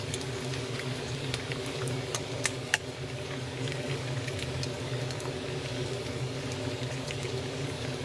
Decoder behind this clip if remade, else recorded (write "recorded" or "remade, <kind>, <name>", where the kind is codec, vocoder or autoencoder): remade, codec, DAC